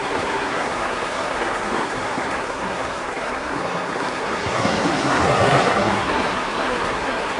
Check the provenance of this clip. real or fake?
fake